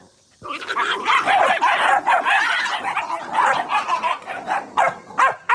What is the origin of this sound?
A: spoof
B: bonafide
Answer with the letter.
B